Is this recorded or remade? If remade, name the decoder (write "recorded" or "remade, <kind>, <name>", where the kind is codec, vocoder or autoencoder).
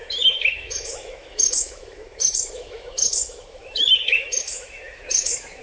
remade, autoencoder, DAC-VAE